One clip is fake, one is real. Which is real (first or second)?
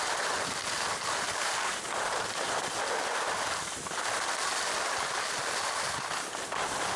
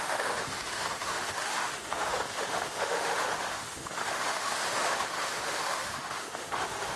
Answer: first